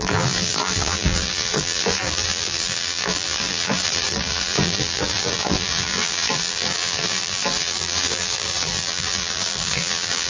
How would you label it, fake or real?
fake